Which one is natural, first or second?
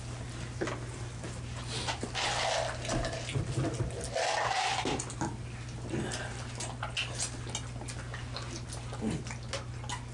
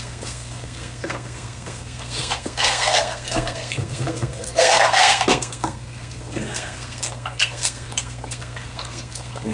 first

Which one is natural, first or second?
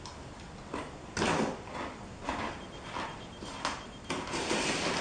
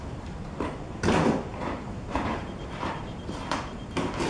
first